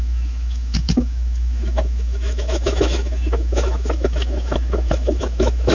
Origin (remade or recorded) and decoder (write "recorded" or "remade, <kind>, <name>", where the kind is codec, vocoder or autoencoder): remade, autoencoder, DAC-VAE